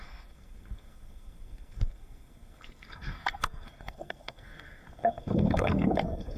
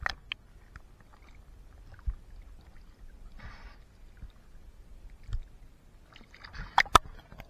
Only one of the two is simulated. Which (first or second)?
first